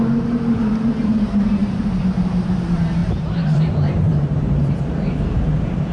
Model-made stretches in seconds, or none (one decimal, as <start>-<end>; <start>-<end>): 0.0-5.9